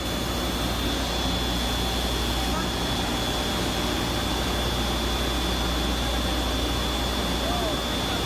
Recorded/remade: recorded